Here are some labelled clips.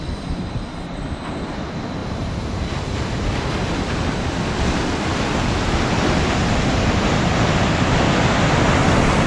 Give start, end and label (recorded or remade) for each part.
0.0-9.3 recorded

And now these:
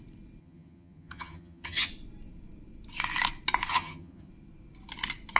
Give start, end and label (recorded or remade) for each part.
0.0-0.4 recorded; 0.4-1.9 remade; 1.9-3.7 recorded; 3.7-4.3 remade; 4.3-5.4 recorded

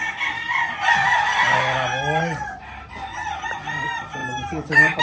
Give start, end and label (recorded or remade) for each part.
0.0-4.2 recorded; 4.2-5.0 remade

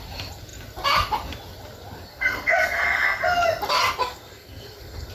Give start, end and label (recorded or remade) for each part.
0.0-2.1 recorded; 2.1-3.2 remade; 3.2-4.0 recorded; 4.0-5.1 remade

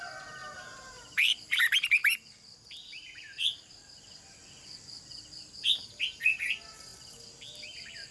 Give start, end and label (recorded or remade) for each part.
0.0-0.4 recorded; 0.4-1.6 remade; 1.6-8.1 recorded

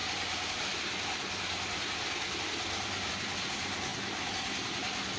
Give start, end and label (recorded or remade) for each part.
0.0-5.2 recorded

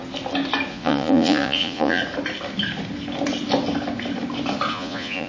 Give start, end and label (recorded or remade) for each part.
0.0-0.7 recorded; 0.7-2.0 remade; 2.0-4.7 recorded; 4.7-5.3 remade